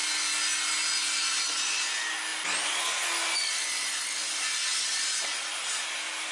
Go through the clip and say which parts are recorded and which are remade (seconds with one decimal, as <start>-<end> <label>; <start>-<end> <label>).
0.0-6.3 recorded